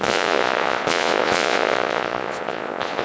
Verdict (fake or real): fake